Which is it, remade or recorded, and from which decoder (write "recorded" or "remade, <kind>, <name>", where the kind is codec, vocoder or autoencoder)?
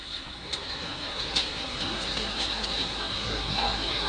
remade, codec, SNAC